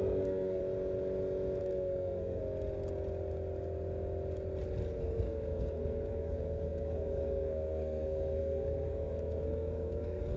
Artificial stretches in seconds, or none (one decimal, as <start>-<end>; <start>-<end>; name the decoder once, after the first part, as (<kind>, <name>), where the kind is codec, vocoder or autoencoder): 0.0-0.6 (codec, SNAC); 1.6-2.4; 5.0-10.4